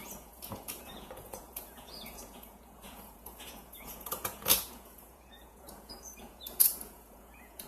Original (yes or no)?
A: no